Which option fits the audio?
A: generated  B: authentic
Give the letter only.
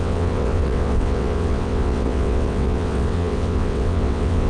A